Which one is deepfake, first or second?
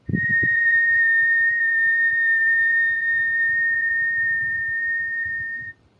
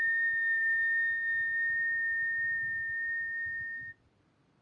first